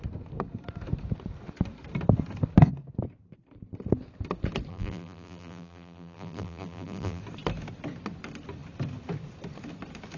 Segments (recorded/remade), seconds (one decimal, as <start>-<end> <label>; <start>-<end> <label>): 0.0-4.7 recorded; 4.7-7.2 remade; 7.2-10.2 recorded